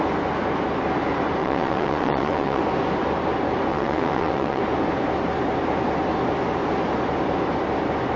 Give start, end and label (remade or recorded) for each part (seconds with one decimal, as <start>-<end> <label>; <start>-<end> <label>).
0.0-1.4 recorded; 1.4-2.6 remade; 2.6-3.7 recorded; 3.7-4.6 remade; 4.6-8.2 recorded